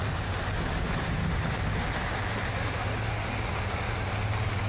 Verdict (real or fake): real